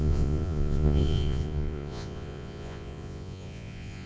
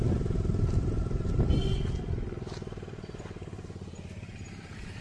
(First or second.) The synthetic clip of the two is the first